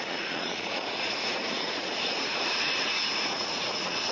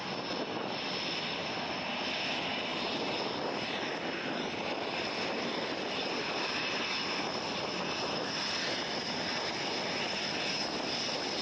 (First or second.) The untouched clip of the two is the second